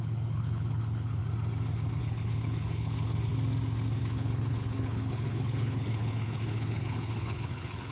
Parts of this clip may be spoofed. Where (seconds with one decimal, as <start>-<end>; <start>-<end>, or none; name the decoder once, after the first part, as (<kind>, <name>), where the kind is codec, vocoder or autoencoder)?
0.0-1.2 (codec, HILCodec); 2.0-3.3; 4.0-7.9

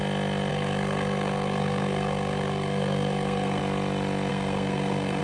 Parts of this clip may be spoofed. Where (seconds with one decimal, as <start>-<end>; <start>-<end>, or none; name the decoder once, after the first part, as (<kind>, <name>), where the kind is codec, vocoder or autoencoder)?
0.5-3.6 (codec, SNAC); 4.3-5.2

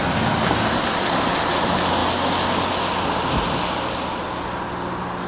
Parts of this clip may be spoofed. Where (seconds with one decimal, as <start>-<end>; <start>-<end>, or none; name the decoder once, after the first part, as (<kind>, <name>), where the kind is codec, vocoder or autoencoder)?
none

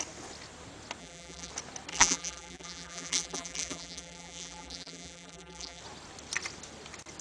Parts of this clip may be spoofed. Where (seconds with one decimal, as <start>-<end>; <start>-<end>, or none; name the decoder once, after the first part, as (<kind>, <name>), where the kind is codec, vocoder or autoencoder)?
1.0-1.5 (vocoder, BigVGAN v2); 1.9-5.8

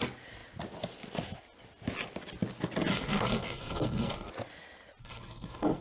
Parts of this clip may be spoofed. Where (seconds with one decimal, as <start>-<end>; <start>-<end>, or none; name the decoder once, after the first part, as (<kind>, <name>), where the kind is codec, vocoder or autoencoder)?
2.9-4.3 (codec, SNAC); 5.0-5.8